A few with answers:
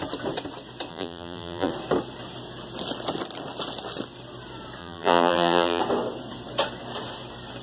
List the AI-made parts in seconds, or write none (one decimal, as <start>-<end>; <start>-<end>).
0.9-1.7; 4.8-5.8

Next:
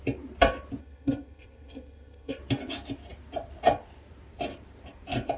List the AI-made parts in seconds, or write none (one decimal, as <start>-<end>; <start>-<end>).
0.8-2.4

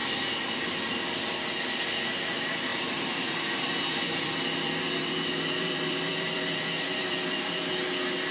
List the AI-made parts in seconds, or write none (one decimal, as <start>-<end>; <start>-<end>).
0.0-0.9; 2.7-7.7